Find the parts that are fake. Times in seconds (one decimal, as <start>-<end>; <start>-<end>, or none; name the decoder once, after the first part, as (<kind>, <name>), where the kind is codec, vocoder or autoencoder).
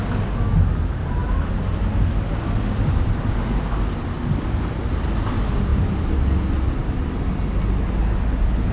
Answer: none